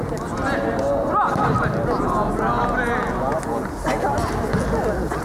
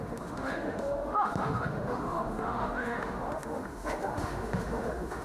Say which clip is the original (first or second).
first